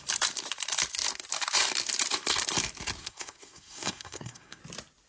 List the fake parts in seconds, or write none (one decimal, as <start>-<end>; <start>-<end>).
3.0-4.6